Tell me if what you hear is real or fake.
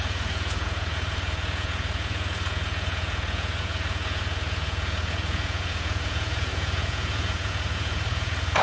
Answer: fake